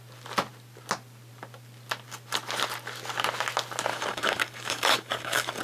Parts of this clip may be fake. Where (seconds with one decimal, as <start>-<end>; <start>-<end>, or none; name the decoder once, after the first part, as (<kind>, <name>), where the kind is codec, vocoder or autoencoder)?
3.9-5.6 (codec, DAC)